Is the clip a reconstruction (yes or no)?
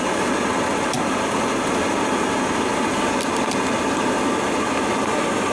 no